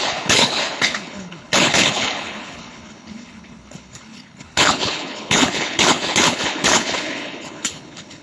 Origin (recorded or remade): remade